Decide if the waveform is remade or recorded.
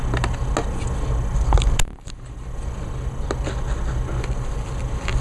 recorded